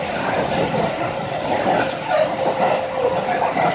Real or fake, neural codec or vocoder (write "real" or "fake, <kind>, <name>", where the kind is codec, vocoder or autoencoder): real